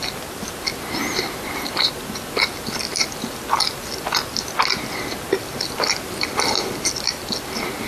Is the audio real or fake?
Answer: real